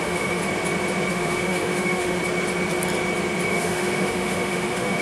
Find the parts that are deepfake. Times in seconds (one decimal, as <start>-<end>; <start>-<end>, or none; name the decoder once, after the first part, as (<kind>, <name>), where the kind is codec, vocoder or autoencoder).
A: 0.0-0.4 (autoencoder, DAC-VAE); 1.1-2.2; 3.5-5.0